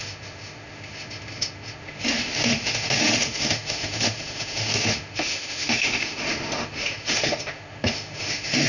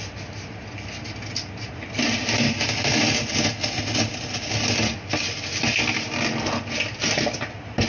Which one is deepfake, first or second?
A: first